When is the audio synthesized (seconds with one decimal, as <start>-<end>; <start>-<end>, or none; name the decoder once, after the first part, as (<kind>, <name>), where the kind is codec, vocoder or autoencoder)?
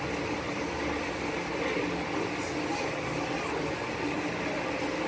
none